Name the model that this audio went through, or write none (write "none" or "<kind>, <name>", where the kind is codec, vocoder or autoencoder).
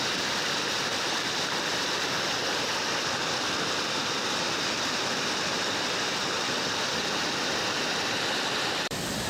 vocoder, BigVGAN v2